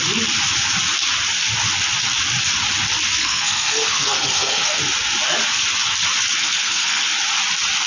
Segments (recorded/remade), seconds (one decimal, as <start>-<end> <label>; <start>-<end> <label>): 0.0-3.2 recorded; 3.2-4.8 remade; 4.8-6.4 recorded; 6.4-7.0 remade; 7.0-7.9 recorded